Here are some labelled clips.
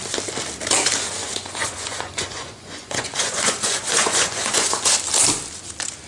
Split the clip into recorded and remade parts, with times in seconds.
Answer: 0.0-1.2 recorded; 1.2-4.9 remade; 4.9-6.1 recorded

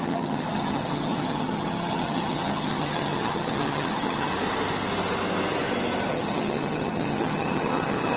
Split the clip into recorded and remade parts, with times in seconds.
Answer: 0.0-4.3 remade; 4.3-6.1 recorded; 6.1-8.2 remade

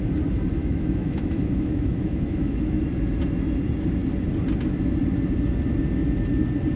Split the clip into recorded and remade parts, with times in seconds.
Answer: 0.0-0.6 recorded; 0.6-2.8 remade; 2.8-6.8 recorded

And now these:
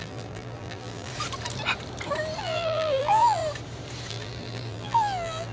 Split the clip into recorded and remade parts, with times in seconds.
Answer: 0.0-1.1 remade; 1.1-2.4 recorded; 2.4-3.4 remade; 3.4-4.1 recorded; 4.1-5.5 remade

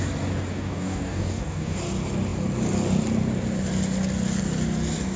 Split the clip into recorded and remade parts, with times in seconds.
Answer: 0.0-0.5 recorded; 0.5-1.8 remade; 1.8-5.2 recorded